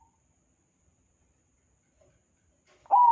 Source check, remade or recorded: recorded